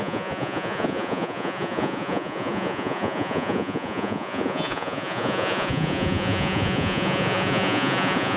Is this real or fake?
fake